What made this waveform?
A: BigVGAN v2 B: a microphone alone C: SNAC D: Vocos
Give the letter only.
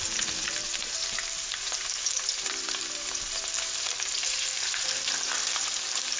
A